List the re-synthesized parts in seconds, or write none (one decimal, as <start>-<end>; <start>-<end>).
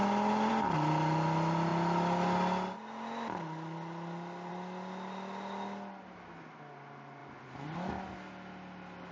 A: none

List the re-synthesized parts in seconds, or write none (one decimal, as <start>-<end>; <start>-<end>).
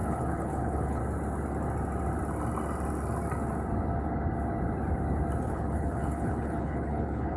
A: 0.0-1.0; 5.4-7.4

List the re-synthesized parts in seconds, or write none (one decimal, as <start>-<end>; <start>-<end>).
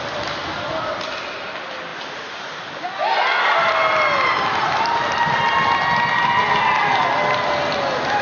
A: none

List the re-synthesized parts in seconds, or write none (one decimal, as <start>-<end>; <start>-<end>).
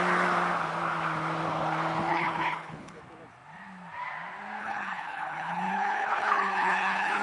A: 2.1-3.0; 4.6-7.2